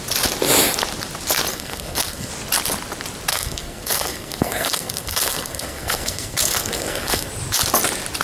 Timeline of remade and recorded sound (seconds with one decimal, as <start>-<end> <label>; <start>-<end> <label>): 0.0-1.5 recorded; 1.5-2.3 remade; 2.3-3.3 recorded; 3.3-7.3 remade; 7.3-8.2 recorded